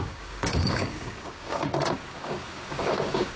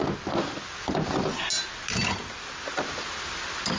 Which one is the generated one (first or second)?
first